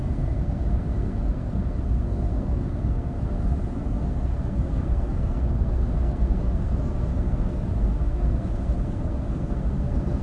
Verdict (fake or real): fake